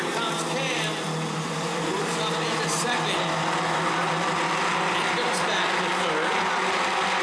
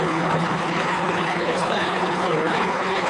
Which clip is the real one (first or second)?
first